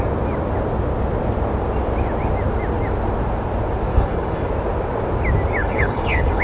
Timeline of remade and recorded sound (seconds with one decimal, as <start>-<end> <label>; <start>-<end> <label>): 0.0-3.9 recorded; 3.9-4.5 remade; 4.5-5.6 recorded; 5.6-6.4 remade